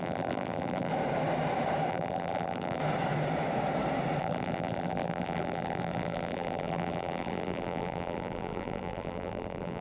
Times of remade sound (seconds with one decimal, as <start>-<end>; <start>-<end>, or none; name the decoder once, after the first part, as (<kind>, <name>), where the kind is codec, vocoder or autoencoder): 0.0-0.9 (vocoder, BigVGAN v2); 1.9-2.8; 4.2-9.8